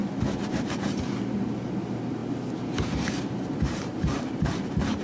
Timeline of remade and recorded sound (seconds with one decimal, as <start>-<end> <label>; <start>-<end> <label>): 0.0-1.0 recorded; 1.0-2.2 remade; 2.2-3.8 recorded; 3.8-5.0 remade